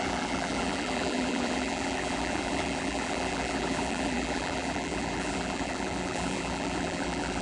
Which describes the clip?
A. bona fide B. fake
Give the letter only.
B